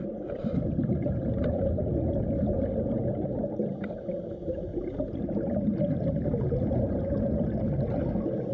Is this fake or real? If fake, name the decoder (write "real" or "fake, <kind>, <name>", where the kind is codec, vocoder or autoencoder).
real